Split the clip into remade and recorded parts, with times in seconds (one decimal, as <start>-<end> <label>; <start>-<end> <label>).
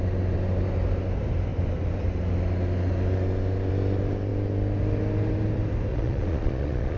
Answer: 0.0-5.9 recorded; 5.9-7.0 remade